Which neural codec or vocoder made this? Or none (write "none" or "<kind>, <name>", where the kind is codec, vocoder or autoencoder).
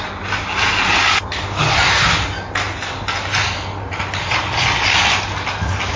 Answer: none